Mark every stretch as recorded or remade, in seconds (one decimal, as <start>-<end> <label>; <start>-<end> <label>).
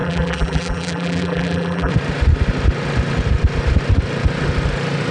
0.0-1.9 remade; 1.9-5.1 recorded